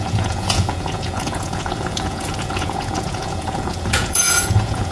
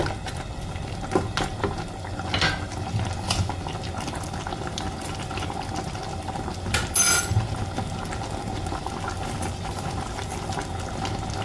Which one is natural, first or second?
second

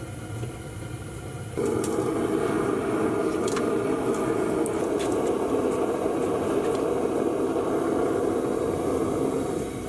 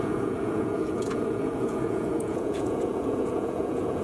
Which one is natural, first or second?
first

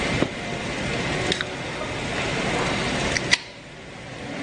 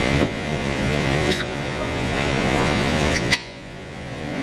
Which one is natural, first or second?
first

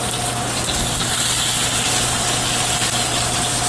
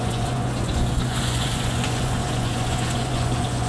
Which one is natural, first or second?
first